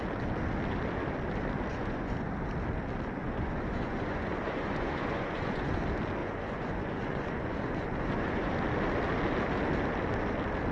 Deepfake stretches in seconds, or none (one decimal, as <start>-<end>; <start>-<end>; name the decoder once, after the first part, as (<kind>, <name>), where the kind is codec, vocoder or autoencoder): 1.7-2.3 (vocoder, Vocos); 3.2-5.8; 6.2-8.5